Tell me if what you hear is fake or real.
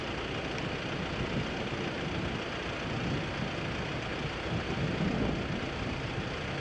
real